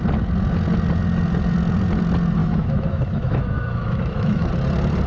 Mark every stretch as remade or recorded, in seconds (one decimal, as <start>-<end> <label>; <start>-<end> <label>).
0.0-2.4 recorded; 2.4-4.5 remade; 4.5-5.1 recorded